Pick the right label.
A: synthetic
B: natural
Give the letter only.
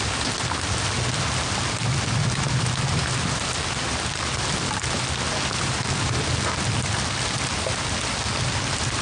B